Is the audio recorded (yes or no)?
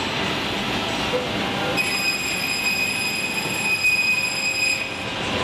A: yes